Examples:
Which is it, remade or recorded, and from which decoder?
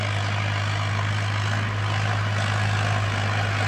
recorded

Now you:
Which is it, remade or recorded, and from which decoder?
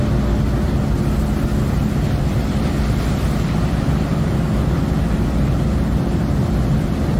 recorded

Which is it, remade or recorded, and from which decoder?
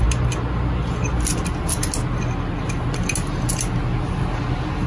recorded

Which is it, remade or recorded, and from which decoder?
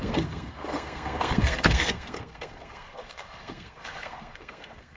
remade, codec, SNAC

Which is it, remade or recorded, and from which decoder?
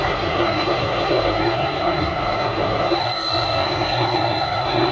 remade, codec, SNAC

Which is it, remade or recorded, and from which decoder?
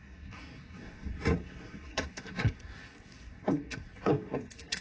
remade, codec, SNAC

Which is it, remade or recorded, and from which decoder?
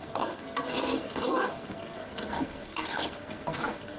remade, codec, SNAC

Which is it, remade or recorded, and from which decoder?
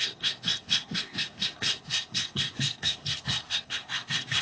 remade, codec, SNAC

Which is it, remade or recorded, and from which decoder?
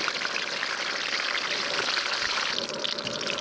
recorded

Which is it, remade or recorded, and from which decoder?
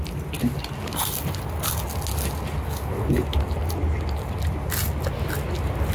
recorded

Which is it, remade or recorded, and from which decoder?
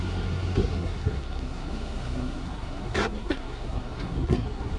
remade, codec, SNAC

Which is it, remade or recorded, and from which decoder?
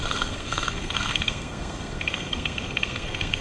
remade, codec, SNAC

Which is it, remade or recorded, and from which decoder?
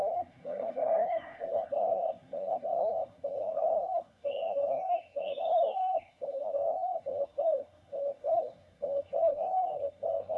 remade, codec, SNAC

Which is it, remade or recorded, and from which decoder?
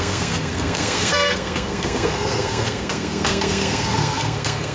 remade, codec, SNAC